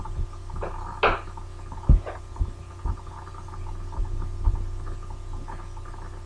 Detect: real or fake real